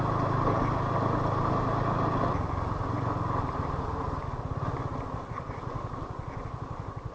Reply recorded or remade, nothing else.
recorded